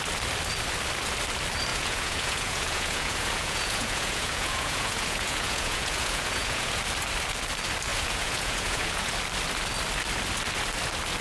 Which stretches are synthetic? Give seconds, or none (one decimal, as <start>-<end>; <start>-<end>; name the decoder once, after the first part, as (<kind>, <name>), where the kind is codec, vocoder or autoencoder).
1.7-6.8 (vocoder, Vocos); 7.9-9.1